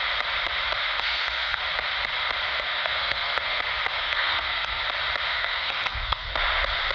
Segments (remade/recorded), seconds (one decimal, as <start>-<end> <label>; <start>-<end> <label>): 0.0-0.8 recorded; 0.8-1.6 remade; 1.6-2.5 recorded; 2.5-3.6 remade; 3.6-4.0 recorded; 4.0-4.8 remade; 4.8-5.3 recorded; 5.3-6.3 remade; 6.3-6.9 recorded